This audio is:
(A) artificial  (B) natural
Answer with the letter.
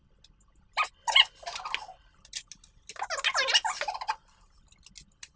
B